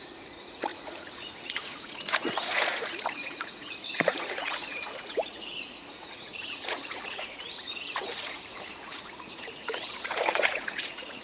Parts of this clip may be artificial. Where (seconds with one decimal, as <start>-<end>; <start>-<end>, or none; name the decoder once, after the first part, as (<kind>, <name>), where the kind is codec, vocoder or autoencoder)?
0.0-11.2 (vocoder, Vocos)